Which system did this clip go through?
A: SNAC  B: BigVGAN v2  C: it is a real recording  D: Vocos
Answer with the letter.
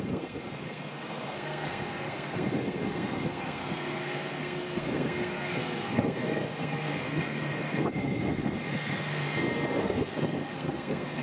A